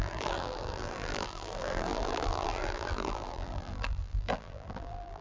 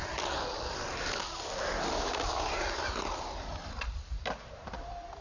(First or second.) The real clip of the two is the second